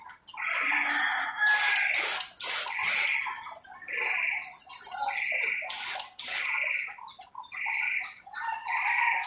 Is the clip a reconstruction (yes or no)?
no